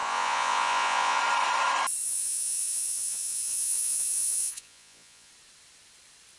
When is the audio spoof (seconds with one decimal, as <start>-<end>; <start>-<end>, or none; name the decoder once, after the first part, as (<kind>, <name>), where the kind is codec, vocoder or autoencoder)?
0.0-1.2 (vocoder, Vocos); 2.0-5.3